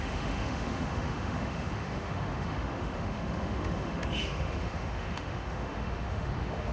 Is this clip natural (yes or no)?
no